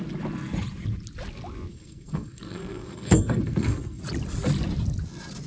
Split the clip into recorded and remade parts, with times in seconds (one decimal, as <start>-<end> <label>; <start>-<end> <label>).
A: 0.0-1.7 recorded; 1.7-4.0 remade; 4.0-5.5 recorded